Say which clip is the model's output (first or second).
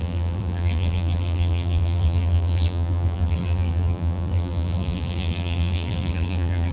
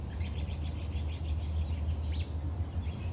first